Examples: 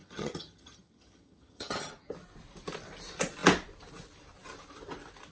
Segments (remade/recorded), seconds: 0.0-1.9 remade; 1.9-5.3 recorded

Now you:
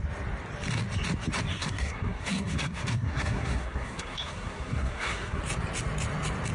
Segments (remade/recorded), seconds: 0.0-1.5 recorded; 1.5-5.4 remade; 5.4-6.5 recorded